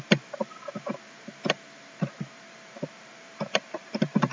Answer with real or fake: fake